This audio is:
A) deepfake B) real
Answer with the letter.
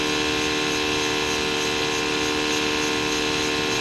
B